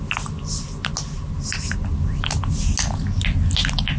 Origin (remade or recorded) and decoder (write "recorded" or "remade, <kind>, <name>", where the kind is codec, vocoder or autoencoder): recorded